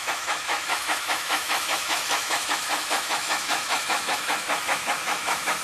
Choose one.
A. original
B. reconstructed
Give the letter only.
B